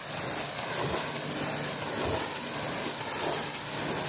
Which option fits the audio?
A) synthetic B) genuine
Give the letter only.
B